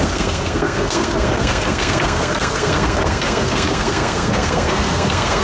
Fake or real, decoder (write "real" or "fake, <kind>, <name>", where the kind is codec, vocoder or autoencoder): fake, codec, SNAC